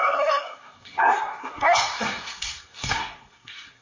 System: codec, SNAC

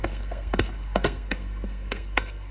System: codec, SNAC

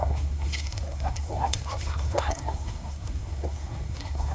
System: codec, SNAC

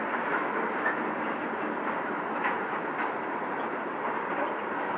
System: none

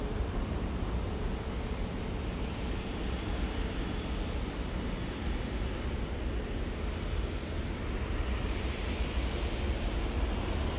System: none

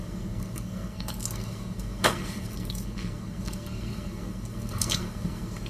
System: codec, SNAC